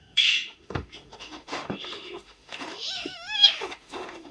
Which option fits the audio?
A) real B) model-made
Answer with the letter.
B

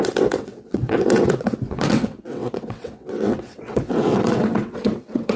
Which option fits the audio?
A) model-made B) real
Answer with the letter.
A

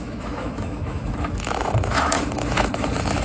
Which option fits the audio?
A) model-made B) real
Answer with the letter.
A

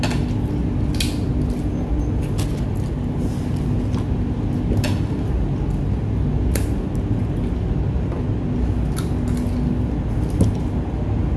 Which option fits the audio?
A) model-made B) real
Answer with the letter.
B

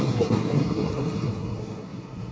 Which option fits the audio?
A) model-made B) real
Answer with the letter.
A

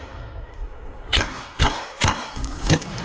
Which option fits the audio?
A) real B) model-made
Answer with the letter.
B